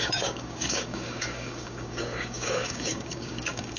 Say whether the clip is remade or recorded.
remade